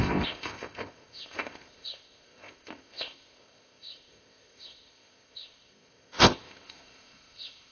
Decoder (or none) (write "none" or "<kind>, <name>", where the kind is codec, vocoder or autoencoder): codec, ZipCodec